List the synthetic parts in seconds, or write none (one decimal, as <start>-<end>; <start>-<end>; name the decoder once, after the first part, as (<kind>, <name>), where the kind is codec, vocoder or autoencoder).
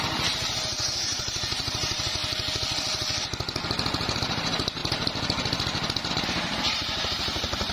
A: 0.0-2.2 (vocoder, BigVGAN v2); 4.2-4.8; 6.1-7.7